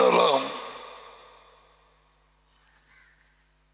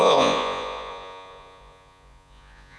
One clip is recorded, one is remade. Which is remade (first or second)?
second